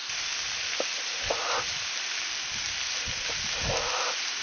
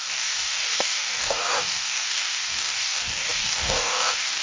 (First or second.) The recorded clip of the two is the first